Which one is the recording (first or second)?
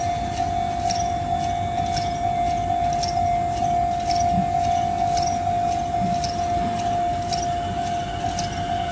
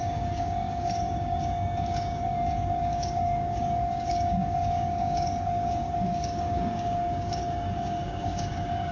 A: first